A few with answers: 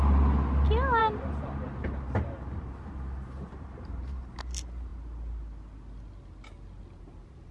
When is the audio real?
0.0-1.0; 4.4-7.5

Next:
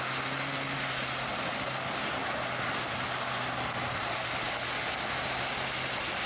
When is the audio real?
0.0-6.3

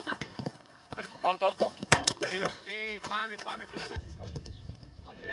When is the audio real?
none

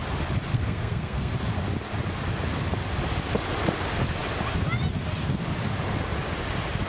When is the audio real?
0.0-0.5; 1.3-6.9